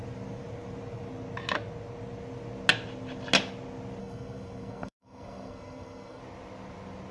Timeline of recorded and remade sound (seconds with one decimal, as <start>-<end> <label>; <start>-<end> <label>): 0.0-4.0 recorded; 4.0-6.2 remade; 6.2-7.1 recorded